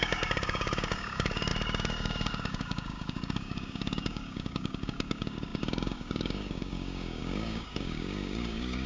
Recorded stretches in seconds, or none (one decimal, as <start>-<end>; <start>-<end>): none